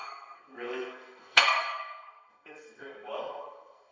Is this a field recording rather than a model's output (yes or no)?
no